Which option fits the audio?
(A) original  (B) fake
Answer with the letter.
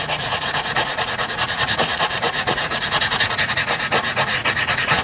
B